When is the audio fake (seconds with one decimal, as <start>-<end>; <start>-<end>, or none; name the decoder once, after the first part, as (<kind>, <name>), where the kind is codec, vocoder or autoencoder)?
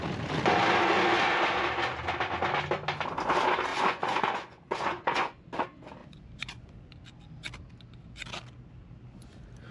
3.7-5.4 (vocoder, Vocos); 6.0-6.9